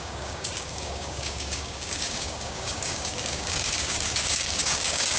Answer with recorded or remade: remade